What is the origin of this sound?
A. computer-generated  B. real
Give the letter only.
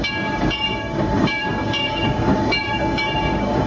A